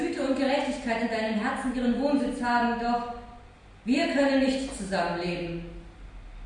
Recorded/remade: recorded